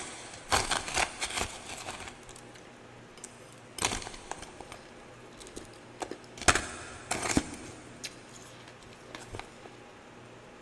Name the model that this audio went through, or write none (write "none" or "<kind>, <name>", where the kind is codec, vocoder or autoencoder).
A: none